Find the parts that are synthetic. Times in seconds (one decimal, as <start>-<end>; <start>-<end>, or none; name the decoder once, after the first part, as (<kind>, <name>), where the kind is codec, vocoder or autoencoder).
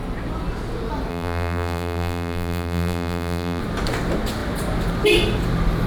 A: 1.1-3.6 (vocoder, BigVGAN v2)